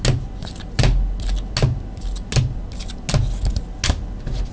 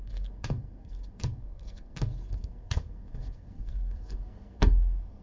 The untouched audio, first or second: first